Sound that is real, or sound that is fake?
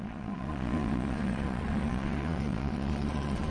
fake